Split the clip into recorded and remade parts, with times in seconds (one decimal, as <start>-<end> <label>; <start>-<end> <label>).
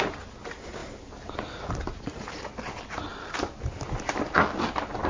0.0-5.1 recorded